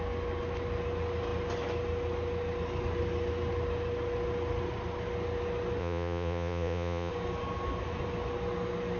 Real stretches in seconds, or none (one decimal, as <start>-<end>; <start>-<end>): 0.0-5.8; 7.1-9.0